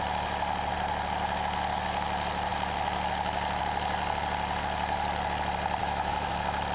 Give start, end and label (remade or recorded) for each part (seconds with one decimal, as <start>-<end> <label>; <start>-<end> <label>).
0.0-5.8 recorded; 5.8-6.3 remade; 6.3-6.7 recorded